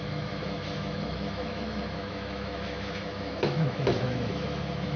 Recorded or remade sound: remade